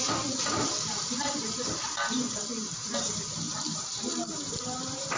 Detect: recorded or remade remade